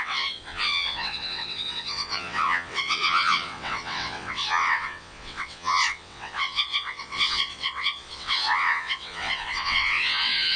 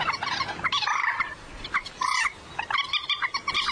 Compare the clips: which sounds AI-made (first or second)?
first